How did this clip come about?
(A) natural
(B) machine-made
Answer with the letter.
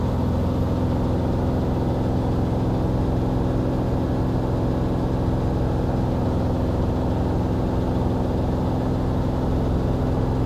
A